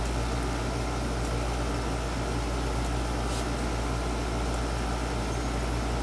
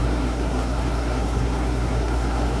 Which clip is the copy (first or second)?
second